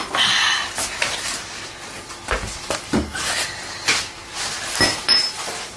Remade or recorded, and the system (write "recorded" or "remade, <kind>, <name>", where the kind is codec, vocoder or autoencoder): recorded